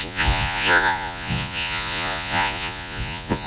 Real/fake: fake